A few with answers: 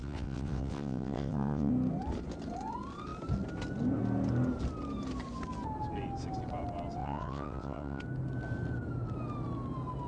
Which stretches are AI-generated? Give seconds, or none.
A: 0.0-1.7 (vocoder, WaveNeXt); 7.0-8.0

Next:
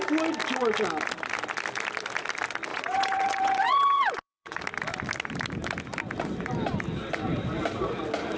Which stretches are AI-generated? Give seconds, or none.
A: 2.7-4.6 (vocoder, WaveNeXt)

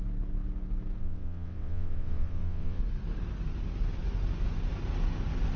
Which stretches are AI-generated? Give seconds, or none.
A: 1.0-2.8 (vocoder, WaveNeXt)

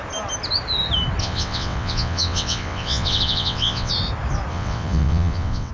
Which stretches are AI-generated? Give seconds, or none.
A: 1.2-3.9 (vocoder, WaveNeXt); 4.5-5.7

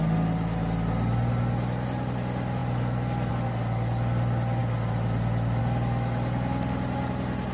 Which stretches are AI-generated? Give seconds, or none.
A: none

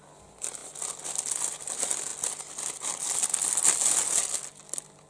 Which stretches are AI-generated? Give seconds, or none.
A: none

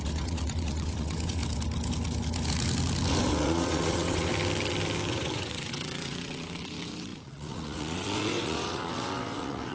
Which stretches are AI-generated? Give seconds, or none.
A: 0.0-1.4 (vocoder, WaveNeXt); 3.3-4.3; 5.1-9.7